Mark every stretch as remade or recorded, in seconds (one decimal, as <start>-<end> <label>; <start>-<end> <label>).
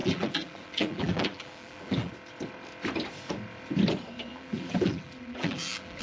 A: 0.0-2.1 remade; 2.1-4.3 recorded; 4.3-6.0 remade